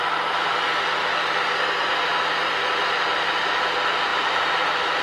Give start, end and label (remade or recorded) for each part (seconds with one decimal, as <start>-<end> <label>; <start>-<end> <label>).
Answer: 0.0-1.8 recorded; 1.8-2.7 remade; 2.7-4.1 recorded; 4.1-5.0 remade